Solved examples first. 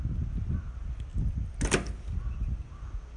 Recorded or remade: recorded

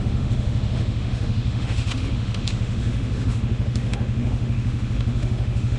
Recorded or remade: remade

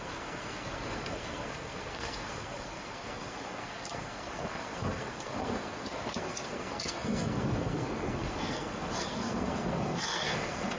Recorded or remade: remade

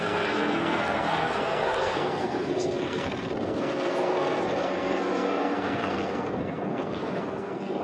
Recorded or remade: remade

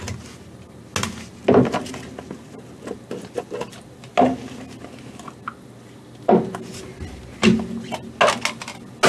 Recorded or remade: recorded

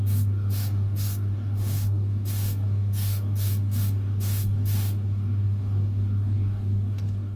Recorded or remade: remade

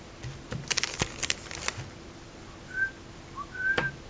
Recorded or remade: recorded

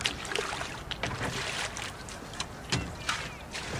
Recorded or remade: recorded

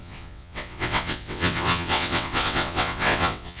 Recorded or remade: remade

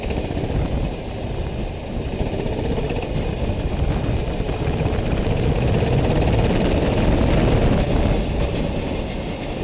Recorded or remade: recorded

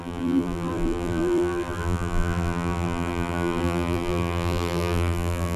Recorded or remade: remade